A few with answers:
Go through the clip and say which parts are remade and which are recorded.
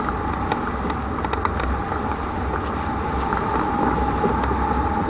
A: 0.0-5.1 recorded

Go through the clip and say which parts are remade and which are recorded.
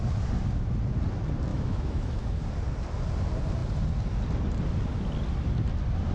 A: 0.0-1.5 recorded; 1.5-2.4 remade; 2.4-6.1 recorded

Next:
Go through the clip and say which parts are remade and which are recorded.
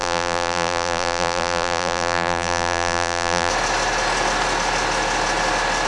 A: 0.0-3.5 remade; 3.5-5.9 recorded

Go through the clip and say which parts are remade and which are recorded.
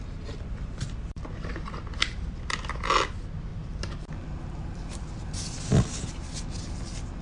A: 0.0-3.5 recorded; 3.5-4.1 remade; 4.1-7.2 recorded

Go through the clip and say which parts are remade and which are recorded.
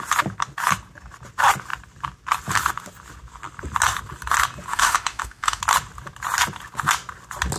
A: 0.0-4.7 recorded; 4.7-5.6 remade; 5.6-7.6 recorded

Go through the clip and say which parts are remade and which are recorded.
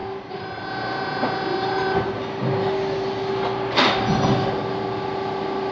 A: 0.0-5.7 recorded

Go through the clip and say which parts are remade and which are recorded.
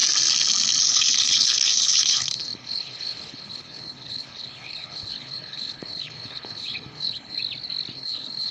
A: 0.0-0.8 recorded; 0.8-7.4 remade; 7.4-7.9 recorded; 7.9-8.5 remade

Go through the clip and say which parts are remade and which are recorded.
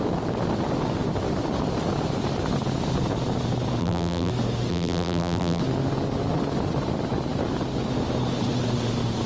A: 0.0-3.8 recorded; 3.8-4.3 remade; 4.3-4.7 recorded; 4.7-5.6 remade; 5.6-9.3 recorded